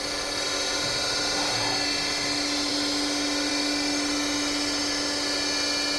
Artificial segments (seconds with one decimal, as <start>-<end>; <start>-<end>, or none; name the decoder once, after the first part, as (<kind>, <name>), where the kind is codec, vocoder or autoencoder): none